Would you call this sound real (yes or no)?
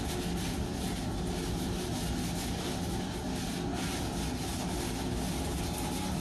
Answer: yes